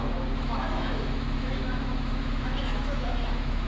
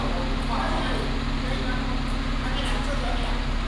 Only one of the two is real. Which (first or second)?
second